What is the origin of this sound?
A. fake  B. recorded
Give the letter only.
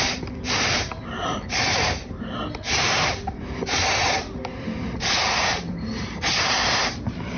A